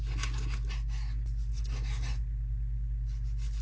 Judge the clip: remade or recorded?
recorded